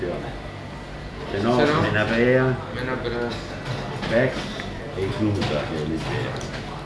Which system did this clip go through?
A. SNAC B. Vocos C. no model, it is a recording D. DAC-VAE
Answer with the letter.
C